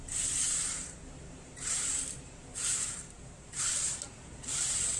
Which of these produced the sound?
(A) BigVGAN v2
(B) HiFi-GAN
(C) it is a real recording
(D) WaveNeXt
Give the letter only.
A